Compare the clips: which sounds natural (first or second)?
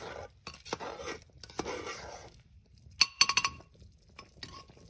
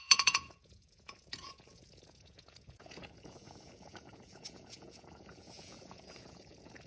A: first